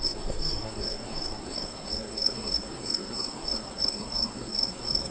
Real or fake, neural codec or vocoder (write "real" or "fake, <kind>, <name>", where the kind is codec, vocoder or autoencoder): fake, codec, SNAC